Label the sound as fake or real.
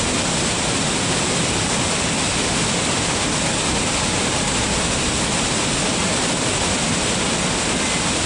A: real